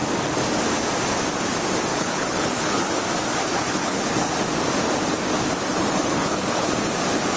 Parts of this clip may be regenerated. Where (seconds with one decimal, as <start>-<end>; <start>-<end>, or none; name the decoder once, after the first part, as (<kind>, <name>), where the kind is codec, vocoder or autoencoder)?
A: 1.9-2.9 (codec, HILCodec); 3.4-4.3; 5.7-6.7